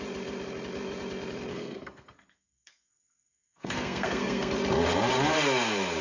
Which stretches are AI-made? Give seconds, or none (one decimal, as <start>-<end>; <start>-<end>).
1.5-4.5